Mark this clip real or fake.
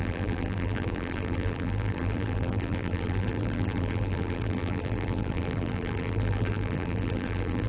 fake